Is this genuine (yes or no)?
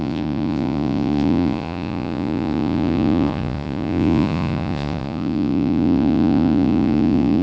no